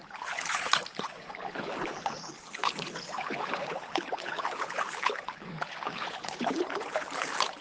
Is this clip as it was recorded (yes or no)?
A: no